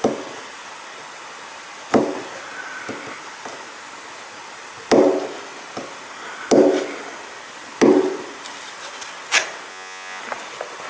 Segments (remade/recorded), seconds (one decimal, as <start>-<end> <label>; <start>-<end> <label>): 0.0-9.7 recorded; 9.7-10.2 remade; 10.2-10.9 recorded